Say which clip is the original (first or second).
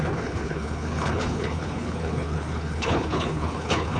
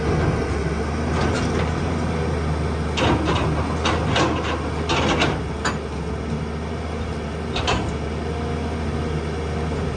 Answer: second